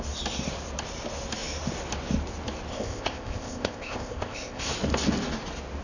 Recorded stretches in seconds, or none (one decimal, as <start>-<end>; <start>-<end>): 0.0-2.7; 4.7-5.8